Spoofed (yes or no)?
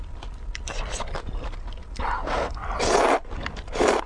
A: no